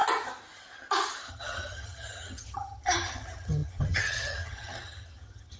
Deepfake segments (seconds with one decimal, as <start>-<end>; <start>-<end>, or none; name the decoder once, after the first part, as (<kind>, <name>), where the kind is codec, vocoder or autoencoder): 1.3-5.6 (vocoder, HiFi-GAN)